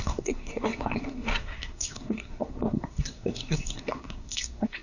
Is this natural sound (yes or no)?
no